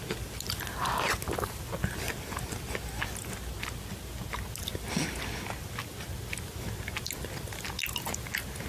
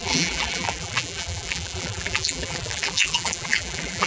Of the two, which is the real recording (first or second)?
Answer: first